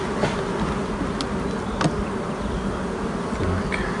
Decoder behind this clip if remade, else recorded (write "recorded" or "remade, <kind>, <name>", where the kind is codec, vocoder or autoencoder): recorded